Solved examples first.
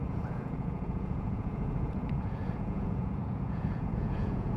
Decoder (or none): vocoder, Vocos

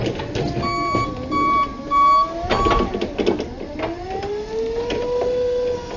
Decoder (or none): none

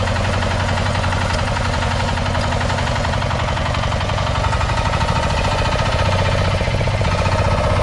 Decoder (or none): vocoder, Vocos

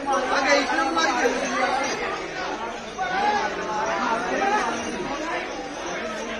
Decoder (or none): none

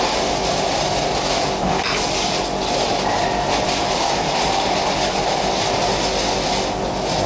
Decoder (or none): none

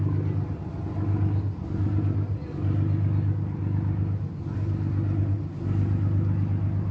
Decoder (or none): none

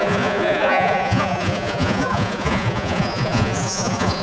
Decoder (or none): vocoder, Vocos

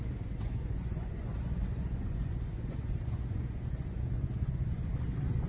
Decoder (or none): vocoder, Vocos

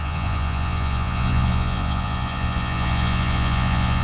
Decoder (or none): vocoder, Vocos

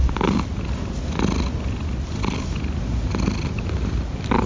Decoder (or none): none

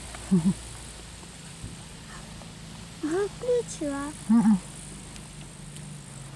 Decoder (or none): none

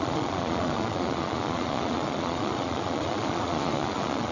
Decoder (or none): vocoder, Vocos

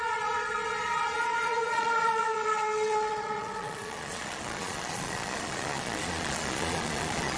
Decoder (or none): vocoder, Vocos